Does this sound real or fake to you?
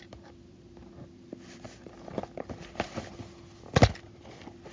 real